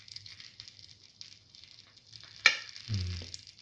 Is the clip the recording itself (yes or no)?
yes